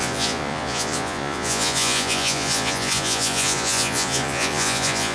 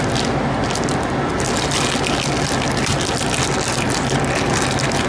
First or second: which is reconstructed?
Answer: first